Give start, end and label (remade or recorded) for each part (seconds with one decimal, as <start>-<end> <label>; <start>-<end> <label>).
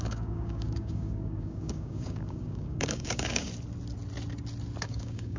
0.0-3.5 remade; 3.5-4.8 recorded; 4.8-5.4 remade